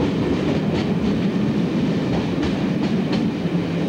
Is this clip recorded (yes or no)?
yes